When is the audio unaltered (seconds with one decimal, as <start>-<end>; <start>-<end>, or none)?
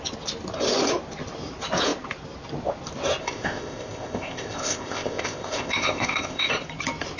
0.0-3.2; 6.5-7.2